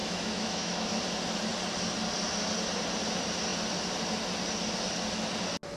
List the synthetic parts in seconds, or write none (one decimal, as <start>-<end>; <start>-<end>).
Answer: 0.0-1.0